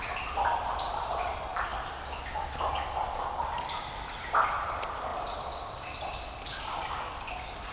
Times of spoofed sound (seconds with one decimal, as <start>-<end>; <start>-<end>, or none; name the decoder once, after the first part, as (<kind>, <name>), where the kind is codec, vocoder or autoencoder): none